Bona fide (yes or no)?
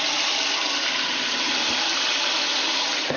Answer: yes